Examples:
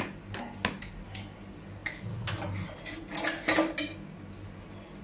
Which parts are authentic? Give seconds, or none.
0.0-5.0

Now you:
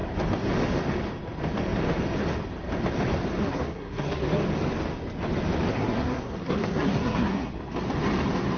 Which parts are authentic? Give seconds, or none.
0.0-3.4; 4.4-5.7; 7.5-8.6

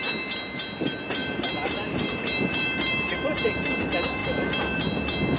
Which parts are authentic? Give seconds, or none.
0.0-1.2; 3.8-5.4

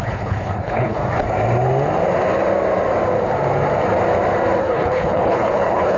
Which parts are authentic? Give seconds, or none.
1.0-4.6

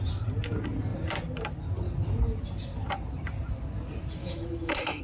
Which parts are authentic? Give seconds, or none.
0.0-4.2

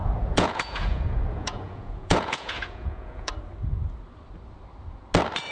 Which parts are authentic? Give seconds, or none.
3.3-5.5

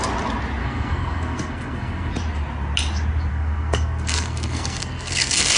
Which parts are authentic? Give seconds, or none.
0.0-0.6; 2.1-3.3

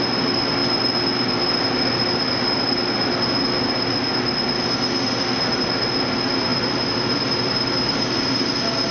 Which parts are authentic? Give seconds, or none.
0.0-6.5; 8.5-8.9